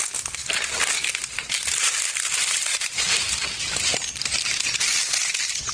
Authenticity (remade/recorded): recorded